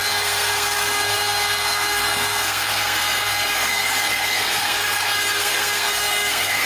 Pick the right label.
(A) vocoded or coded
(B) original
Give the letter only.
A